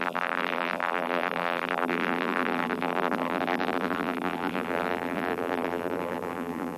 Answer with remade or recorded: remade